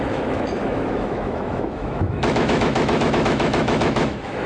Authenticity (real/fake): fake